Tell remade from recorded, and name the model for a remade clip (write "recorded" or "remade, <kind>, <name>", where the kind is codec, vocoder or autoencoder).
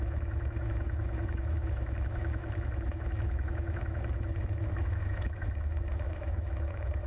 remade, autoencoder, DAC-VAE